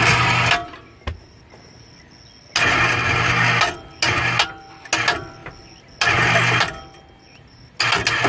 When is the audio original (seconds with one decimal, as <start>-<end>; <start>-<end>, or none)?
0.0-0.6; 1.9-8.3